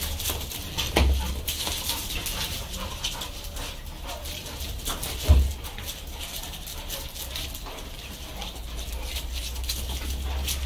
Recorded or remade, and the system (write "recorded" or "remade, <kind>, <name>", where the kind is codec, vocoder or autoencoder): recorded